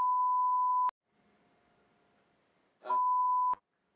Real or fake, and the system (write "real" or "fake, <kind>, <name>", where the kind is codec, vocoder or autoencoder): real